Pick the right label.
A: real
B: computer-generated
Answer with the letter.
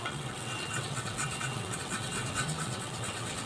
B